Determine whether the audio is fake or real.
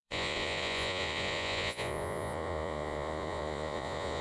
fake